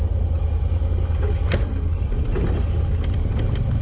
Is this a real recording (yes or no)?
yes